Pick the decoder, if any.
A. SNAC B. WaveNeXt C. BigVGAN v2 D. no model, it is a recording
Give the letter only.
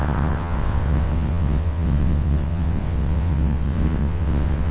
B